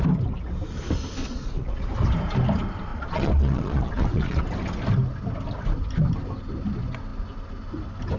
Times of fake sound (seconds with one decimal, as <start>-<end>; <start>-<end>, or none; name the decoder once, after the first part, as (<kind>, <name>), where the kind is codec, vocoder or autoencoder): 1.2-1.8 (vocoder, Vocos); 2.9-4.4